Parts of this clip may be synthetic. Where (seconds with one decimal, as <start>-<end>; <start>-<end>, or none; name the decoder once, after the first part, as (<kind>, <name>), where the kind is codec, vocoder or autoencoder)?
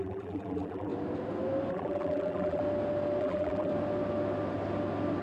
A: 0.0-0.9 (vocoder, BigVGAN v2); 1.7-2.6; 3.2-3.7